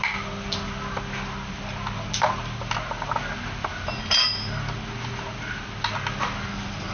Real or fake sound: real